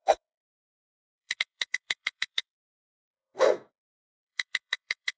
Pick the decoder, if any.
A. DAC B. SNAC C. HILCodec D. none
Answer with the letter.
B